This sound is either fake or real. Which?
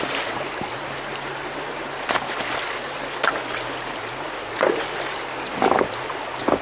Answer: real